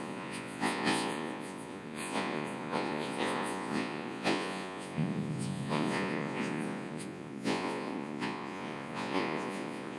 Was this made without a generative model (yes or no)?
no